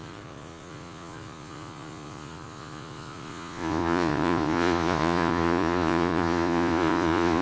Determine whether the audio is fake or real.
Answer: fake